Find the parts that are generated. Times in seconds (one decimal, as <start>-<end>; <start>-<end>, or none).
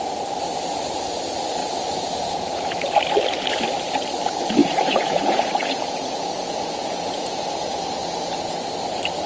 1.6-2.7; 4.6-7.5